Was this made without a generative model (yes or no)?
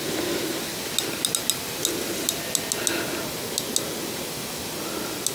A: yes